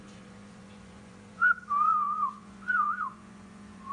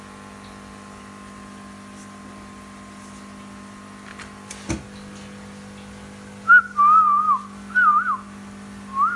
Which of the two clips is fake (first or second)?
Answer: first